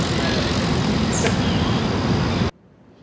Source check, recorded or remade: recorded